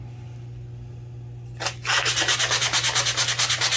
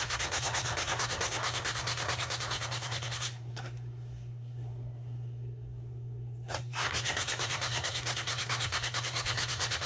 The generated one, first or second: second